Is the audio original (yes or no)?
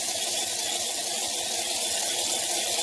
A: yes